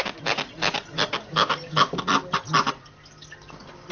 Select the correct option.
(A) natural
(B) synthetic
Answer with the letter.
A